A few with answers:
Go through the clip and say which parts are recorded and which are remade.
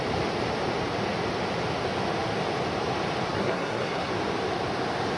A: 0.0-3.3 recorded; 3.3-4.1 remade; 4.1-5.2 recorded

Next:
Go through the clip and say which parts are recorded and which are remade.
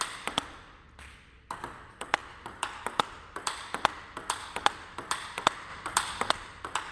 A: 0.0-2.2 recorded; 2.2-4.0 remade; 4.0-5.7 recorded; 5.7-6.3 remade; 6.3-6.9 recorded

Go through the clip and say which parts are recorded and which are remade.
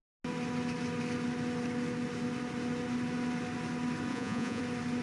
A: 0.0-4.1 recorded; 4.1-4.6 remade; 4.6-5.0 recorded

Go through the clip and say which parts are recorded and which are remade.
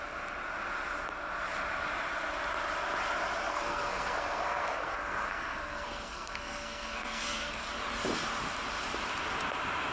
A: 0.0-3.5 recorded; 3.5-7.7 remade; 7.7-9.9 recorded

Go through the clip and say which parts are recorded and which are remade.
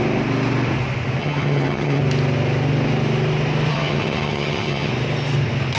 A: 0.0-1.2 recorded; 1.2-2.0 remade; 2.0-3.7 recorded; 3.7-4.9 remade; 4.9-5.8 recorded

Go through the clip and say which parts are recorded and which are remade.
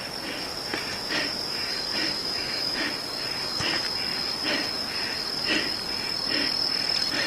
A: 0.0-2.2 recorded; 2.2-2.9 remade; 2.9-7.3 recorded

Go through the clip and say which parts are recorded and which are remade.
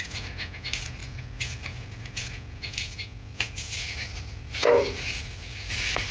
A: 0.0-6.1 recorded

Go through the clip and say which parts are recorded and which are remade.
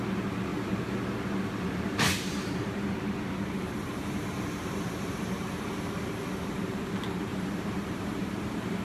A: 0.0-0.5 recorded; 0.5-5.6 remade; 5.6-7.3 recorded; 7.3-8.8 remade